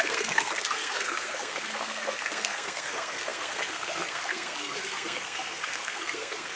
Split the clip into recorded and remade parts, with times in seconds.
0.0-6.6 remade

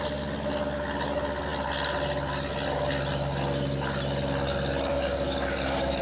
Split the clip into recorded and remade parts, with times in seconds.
0.0-4.9 recorded; 4.9-6.0 remade

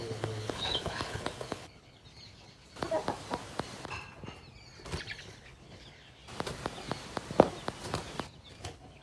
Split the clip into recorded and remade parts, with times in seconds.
0.0-2.0 remade; 2.0-5.2 recorded; 5.2-6.2 remade; 6.2-8.6 recorded; 8.6-9.0 remade

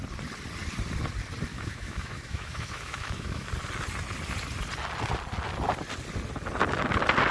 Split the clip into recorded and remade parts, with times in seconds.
0.0-1.5 recorded; 1.5-3.5 remade; 3.5-7.3 recorded

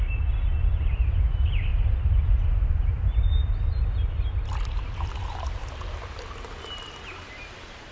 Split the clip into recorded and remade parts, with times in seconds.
0.0-1.7 recorded; 1.7-4.5 remade; 4.5-5.6 recorded; 5.6-7.4 remade; 7.4-7.9 recorded